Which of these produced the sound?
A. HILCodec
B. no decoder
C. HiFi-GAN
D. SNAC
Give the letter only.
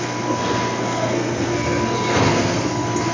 D